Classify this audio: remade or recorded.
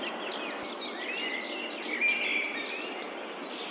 recorded